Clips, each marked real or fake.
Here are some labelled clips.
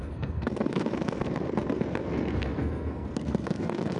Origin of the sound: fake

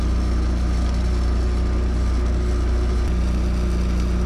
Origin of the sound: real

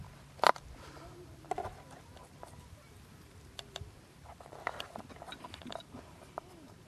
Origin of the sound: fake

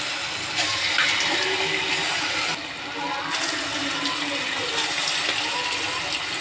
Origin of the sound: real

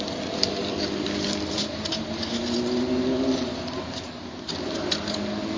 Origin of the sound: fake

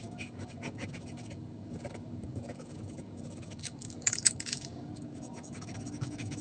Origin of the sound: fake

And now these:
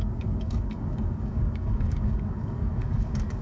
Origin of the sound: fake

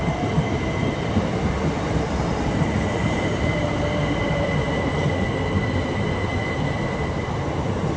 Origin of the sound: fake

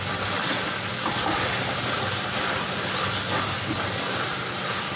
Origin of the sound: real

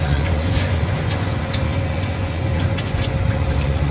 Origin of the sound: fake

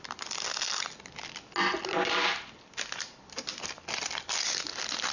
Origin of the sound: real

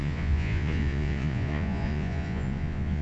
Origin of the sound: fake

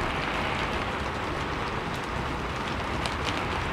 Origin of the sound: real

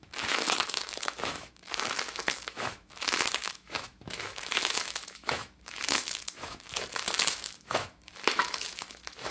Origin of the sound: fake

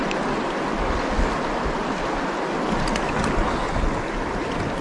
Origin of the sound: real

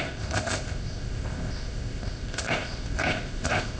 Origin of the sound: fake